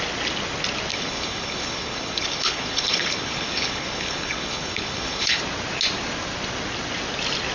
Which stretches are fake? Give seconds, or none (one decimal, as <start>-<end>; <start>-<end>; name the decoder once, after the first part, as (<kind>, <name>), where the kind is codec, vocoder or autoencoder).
0.9-5.4 (codec, HILCodec)